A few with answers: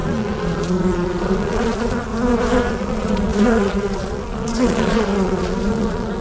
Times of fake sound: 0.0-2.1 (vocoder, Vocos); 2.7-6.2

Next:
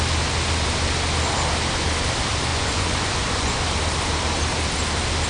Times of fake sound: 2.5-3.6 (vocoder, Vocos)

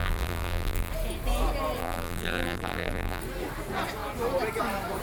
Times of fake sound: 0.0-0.9 (vocoder, BigVGAN v2); 1.8-3.2

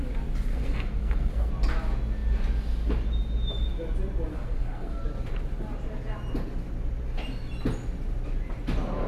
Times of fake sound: 0.5-1.5 (codec, SNAC); 4.3-5.0

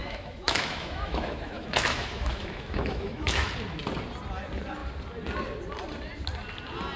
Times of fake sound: 0.0-3.5 (autoencoder, DAC-VAE)

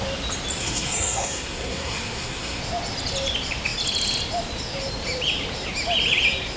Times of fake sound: 0.6-2.6 (codec, SNAC)